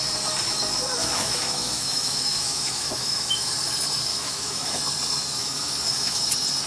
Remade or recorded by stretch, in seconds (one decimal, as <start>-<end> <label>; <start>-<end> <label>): 0.0-1.0 recorded; 1.0-3.5 remade; 3.5-4.1 recorded; 4.1-4.8 remade; 4.8-5.4 recorded; 5.4-6.2 remade; 6.2-6.7 recorded